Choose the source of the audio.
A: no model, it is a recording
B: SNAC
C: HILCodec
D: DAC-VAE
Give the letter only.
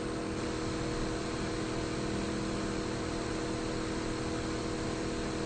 A